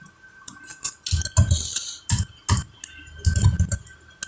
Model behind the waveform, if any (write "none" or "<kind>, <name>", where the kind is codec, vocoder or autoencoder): none